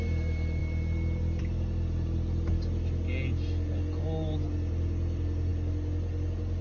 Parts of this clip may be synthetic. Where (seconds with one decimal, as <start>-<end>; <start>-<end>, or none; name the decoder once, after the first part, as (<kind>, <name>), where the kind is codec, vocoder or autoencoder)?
none